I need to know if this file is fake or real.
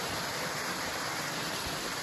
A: fake